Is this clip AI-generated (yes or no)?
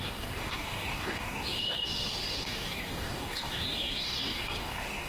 yes